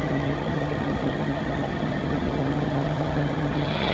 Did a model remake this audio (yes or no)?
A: yes